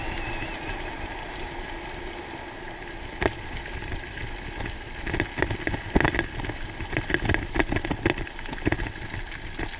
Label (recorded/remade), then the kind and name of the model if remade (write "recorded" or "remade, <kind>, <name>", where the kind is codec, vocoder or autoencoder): recorded